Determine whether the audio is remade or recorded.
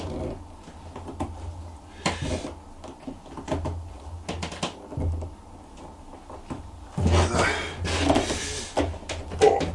recorded